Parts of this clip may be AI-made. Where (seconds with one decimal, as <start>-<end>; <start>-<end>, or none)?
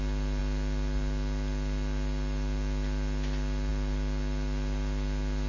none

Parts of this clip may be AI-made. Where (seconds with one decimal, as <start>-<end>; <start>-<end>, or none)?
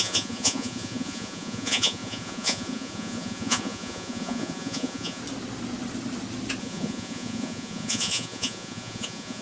0.0-5.2; 6.6-9.4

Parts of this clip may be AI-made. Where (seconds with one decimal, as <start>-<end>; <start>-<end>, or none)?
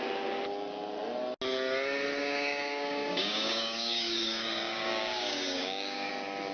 2.2-6.1